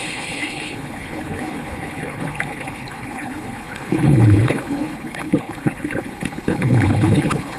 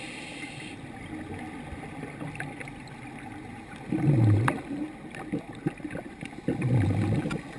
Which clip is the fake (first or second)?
first